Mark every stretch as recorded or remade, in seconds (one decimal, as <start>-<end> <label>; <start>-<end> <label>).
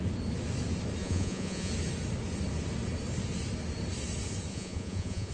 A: 0.0-1.0 recorded; 1.0-1.7 remade; 1.7-4.5 recorded; 4.5-5.3 remade